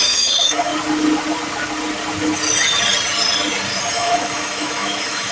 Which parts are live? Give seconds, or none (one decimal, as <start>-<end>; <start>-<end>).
0.7-3.9